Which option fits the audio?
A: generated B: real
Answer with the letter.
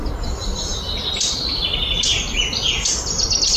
B